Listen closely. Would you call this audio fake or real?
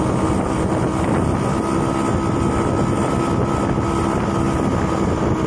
real